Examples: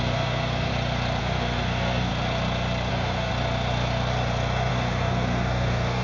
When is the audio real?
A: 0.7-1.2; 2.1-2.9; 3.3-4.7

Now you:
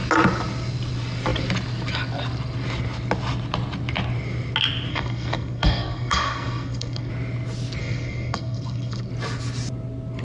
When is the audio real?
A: 0.0-4.9; 7.1-7.8; 9.1-10.2

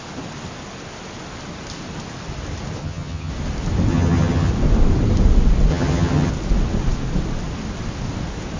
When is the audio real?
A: 0.0-2.8; 3.3-3.9; 4.5-5.7; 6.3-8.6

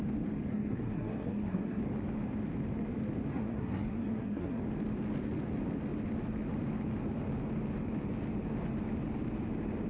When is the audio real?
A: 0.0-0.5; 1.8-3.3; 4.6-9.9

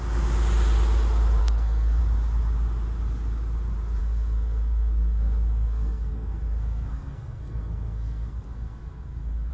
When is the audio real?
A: 0.0-1.4; 2.0-4.0

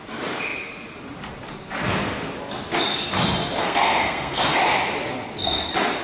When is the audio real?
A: 0.0-3.6; 4.4-6.0